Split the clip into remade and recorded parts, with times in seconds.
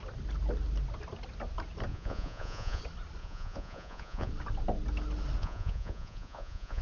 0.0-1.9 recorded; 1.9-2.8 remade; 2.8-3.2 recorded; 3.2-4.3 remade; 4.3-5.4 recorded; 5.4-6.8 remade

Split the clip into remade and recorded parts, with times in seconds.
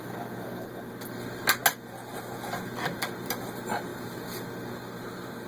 0.0-5.5 recorded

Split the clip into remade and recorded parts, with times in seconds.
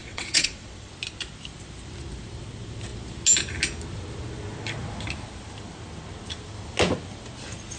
0.0-0.9 remade; 0.9-7.8 recorded